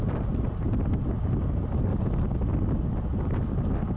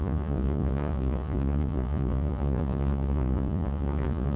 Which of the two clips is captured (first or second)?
first